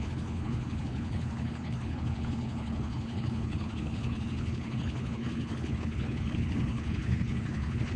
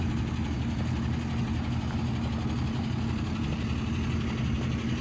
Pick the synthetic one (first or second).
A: first